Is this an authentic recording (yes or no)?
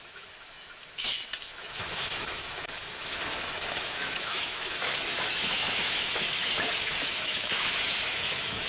no